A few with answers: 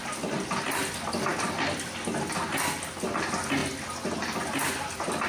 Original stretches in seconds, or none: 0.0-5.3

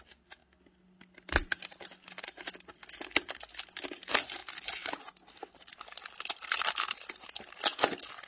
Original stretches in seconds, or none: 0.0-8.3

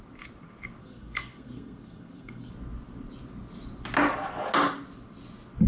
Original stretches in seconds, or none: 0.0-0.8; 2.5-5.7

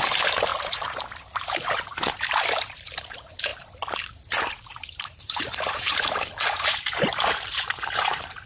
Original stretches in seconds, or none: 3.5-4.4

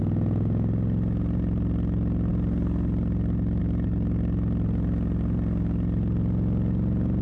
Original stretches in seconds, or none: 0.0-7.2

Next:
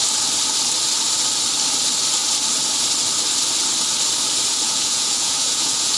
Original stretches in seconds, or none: 0.0-4.5

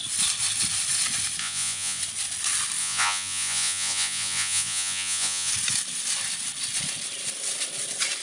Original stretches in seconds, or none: 0.0-1.4; 2.0-2.8; 5.5-8.2